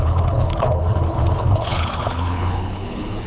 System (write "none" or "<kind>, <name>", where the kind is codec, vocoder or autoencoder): codec, HILCodec